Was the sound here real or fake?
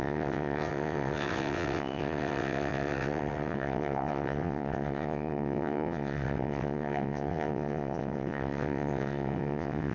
fake